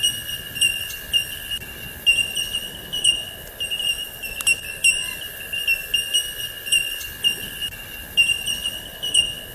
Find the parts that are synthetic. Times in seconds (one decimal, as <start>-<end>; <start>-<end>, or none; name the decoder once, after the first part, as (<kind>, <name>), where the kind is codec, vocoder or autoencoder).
none